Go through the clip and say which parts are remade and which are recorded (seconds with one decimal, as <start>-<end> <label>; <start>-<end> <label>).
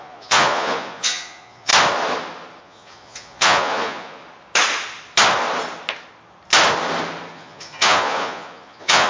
0.0-1.7 remade; 1.7-2.6 recorded; 2.6-4.2 remade; 4.2-7.3 recorded; 7.3-9.1 remade